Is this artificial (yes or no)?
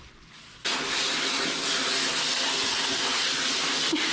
no